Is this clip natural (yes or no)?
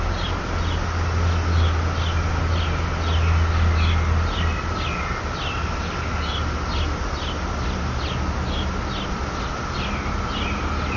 yes